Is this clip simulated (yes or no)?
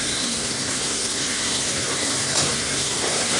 yes